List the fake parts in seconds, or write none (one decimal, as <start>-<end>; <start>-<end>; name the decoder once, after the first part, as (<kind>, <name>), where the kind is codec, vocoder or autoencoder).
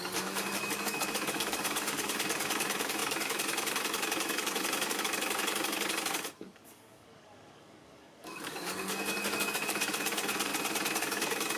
0.0-10.5 (codec, DAC); 11.0-11.6